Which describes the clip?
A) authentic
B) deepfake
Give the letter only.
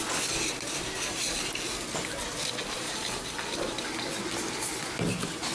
A